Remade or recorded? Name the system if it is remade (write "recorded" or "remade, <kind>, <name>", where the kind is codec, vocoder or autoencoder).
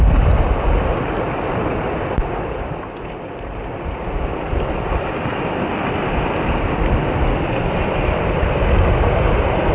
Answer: recorded